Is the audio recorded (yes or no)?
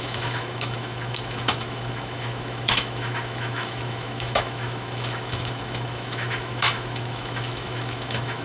no